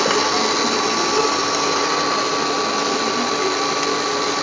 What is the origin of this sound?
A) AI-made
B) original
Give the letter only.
B